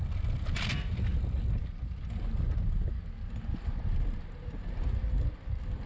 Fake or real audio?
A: real